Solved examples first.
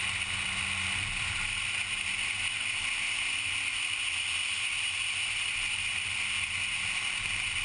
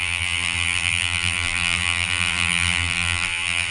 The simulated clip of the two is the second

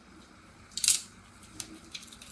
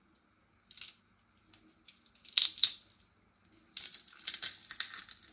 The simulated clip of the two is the first